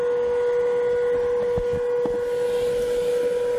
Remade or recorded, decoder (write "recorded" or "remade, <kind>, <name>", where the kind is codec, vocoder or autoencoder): recorded